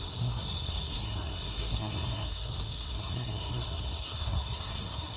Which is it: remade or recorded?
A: remade